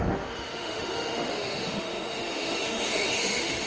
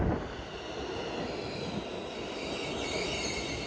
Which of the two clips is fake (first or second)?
first